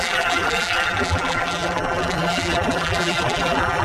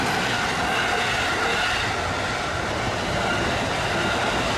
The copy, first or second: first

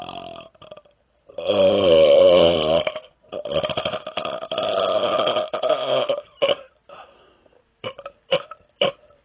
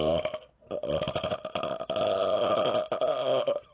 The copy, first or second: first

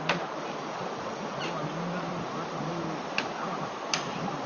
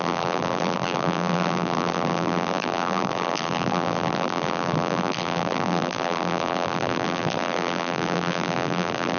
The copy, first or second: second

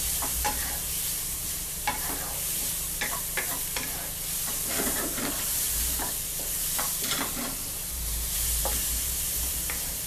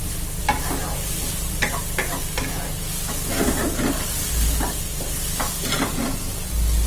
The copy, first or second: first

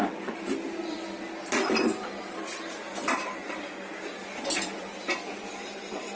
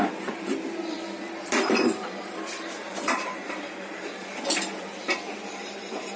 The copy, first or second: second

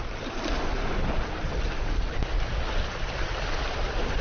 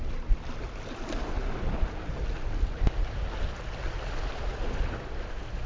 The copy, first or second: first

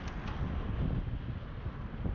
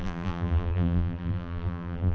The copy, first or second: second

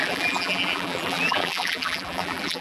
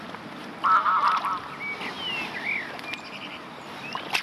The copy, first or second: first